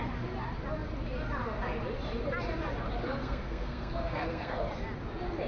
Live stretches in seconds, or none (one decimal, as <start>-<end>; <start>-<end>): 0.0-3.2; 4.6-5.5